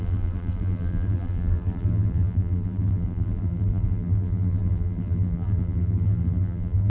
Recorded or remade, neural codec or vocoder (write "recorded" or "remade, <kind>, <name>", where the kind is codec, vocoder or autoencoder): remade, vocoder, BigVGAN v2